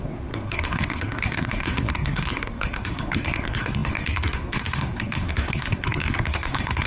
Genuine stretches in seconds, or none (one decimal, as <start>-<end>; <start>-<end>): none